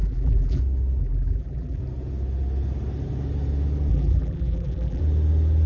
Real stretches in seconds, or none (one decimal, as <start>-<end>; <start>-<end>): 0.6-1.0; 1.8-3.9; 5.0-5.7